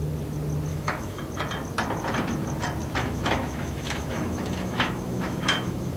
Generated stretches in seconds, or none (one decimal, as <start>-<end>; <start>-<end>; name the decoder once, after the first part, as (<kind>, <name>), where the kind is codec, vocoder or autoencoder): 0.7-1.2 (autoencoder, DAC-VAE); 3.0-6.0